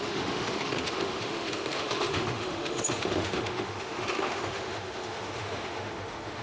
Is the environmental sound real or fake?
fake